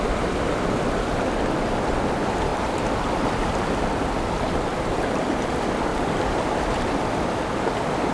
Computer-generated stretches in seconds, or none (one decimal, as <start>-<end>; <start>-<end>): 2.5-4.0; 4.7-5.3; 5.9-6.8